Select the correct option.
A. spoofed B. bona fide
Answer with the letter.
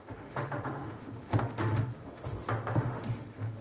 A